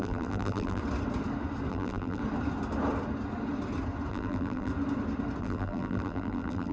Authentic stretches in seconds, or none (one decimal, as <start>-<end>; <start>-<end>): 0.8-1.7; 2.2-4.1; 4.7-5.4